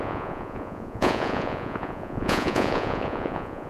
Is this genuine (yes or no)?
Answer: no